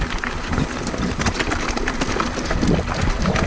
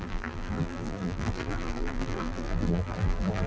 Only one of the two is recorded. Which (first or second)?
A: first